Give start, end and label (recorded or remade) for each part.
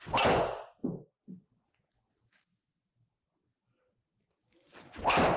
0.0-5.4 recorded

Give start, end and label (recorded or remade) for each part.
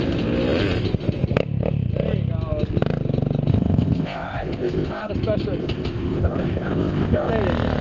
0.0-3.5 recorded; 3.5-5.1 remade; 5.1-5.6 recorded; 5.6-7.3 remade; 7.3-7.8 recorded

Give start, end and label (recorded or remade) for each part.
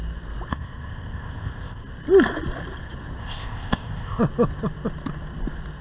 0.0-0.5 recorded; 0.5-1.8 remade; 1.8-3.2 recorded; 3.2-4.2 remade; 4.2-5.8 recorded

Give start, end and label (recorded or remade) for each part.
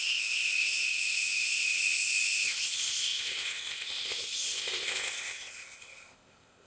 0.0-6.7 remade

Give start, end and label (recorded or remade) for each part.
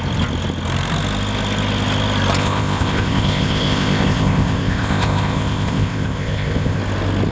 0.0-2.4 recorded; 2.4-6.8 remade; 6.8-7.3 recorded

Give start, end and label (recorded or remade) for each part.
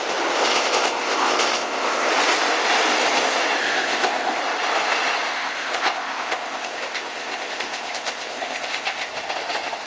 0.0-0.4 recorded; 0.4-2.1 remade; 2.1-3.6 recorded; 3.6-4.4 remade; 4.4-5.3 recorded; 5.3-9.1 remade; 9.1-9.9 recorded